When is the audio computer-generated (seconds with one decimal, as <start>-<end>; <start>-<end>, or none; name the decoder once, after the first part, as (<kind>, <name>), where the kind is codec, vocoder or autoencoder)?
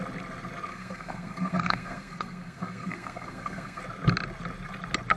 0.7-3.8 (codec, SNAC)